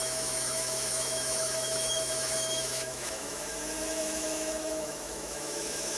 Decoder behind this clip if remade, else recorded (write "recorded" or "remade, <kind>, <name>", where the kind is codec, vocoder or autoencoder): remade, autoencoder, DAC-VAE